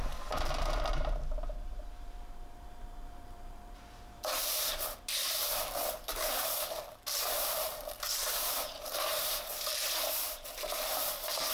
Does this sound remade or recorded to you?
remade